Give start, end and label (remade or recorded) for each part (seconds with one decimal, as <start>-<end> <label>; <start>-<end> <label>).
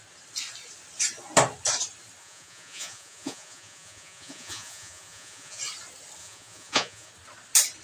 0.0-2.2 recorded; 2.2-5.6 remade; 5.6-6.2 recorded; 6.2-7.1 remade; 7.1-7.8 recorded